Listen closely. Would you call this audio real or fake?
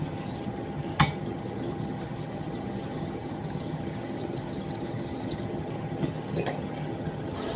fake